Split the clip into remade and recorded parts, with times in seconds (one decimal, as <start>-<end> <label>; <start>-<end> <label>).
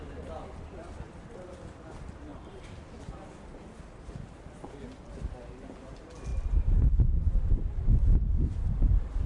0.0-2.3 recorded; 2.3-3.0 remade; 3.0-6.3 recorded; 6.3-6.9 remade; 6.9-9.3 recorded